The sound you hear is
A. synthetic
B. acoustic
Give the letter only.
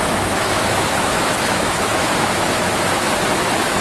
A